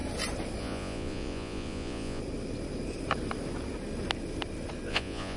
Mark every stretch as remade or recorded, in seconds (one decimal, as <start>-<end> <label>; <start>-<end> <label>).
0.0-0.6 recorded; 0.6-2.2 remade; 2.2-4.9 recorded; 4.9-5.4 remade